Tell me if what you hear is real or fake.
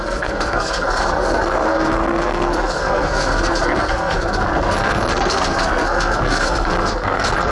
fake